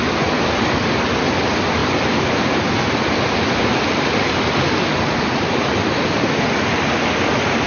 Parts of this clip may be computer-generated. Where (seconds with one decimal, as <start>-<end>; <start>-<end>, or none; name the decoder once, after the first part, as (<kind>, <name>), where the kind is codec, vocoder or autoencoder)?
none